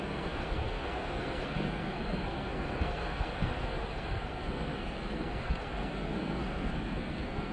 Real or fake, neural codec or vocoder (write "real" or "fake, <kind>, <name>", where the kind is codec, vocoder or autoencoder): fake, codec, SNAC